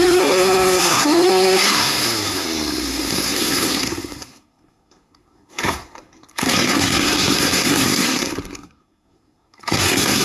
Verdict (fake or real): fake